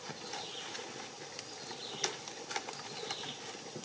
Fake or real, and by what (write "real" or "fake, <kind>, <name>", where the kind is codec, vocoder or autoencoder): real